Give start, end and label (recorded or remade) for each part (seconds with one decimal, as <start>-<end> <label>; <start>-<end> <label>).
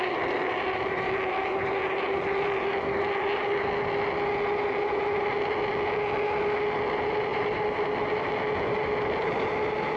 0.0-10.0 recorded